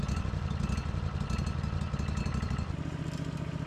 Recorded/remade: recorded